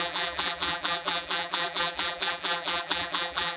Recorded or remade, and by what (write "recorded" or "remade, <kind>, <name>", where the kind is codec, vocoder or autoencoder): remade, vocoder, BigVGAN v2